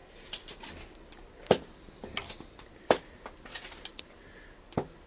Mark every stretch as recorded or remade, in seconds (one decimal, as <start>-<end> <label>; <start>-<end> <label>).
0.0-5.1 recorded